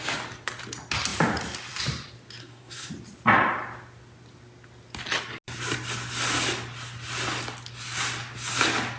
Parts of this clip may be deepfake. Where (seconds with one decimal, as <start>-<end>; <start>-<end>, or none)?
2.4-2.9